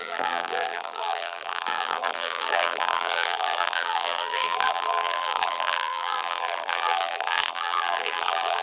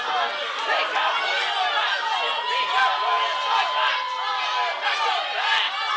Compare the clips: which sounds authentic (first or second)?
second